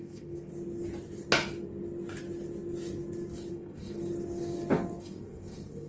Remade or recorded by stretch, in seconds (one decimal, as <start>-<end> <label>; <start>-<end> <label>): 0.0-0.5 remade; 0.5-3.5 recorded; 3.5-4.0 remade; 4.0-5.0 recorded; 5.0-5.9 remade